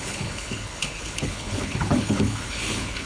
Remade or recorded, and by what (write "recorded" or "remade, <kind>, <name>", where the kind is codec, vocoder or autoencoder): remade, codec, HILCodec